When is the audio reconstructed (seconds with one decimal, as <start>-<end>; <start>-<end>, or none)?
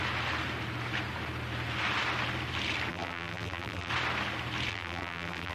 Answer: 2.9-3.9; 4.7-5.5